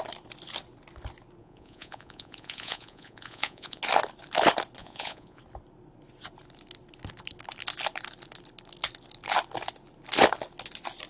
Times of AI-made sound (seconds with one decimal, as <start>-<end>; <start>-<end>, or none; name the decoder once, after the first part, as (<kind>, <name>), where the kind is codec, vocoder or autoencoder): 1.4-3.8 (vocoder, Vocos); 4.8-5.4